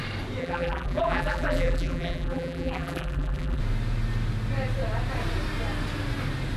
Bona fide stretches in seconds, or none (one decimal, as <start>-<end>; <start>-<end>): 0.0-0.4; 3.6-6.6